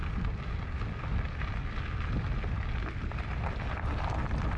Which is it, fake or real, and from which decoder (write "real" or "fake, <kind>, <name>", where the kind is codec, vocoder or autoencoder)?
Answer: real